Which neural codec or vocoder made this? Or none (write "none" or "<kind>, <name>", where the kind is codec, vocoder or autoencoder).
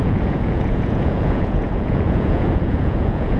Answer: vocoder, Vocos